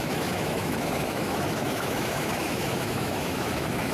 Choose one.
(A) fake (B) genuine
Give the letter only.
A